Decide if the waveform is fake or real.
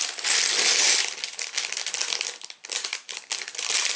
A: real